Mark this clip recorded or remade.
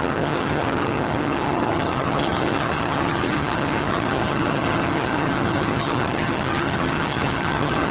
remade